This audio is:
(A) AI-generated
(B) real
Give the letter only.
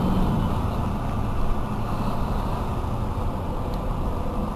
B